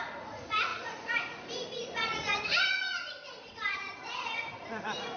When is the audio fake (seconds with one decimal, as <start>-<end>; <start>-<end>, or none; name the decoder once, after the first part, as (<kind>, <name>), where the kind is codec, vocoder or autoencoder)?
0.0-5.2 (vocoder, Vocos)